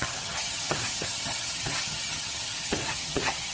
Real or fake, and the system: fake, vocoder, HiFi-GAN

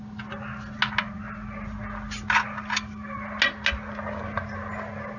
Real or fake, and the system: real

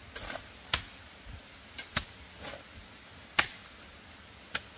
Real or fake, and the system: real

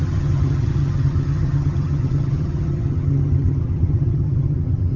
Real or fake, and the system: fake, vocoder, HiFi-GAN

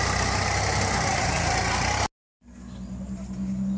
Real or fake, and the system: real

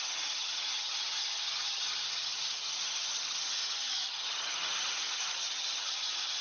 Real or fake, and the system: fake, vocoder, HiFi-GAN